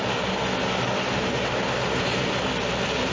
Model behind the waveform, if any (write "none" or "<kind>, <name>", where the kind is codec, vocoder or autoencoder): none